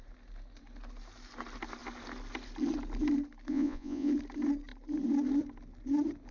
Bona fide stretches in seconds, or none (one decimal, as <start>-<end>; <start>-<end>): 0.0-3.5; 4.1-6.3